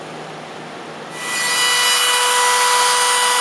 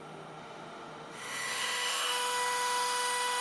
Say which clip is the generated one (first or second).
second